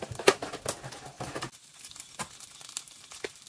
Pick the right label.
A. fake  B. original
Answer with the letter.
B